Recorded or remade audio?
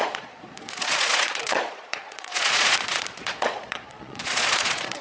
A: remade